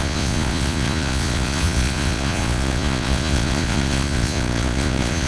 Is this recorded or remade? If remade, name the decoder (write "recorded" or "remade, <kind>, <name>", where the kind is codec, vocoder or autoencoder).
remade, vocoder, Vocos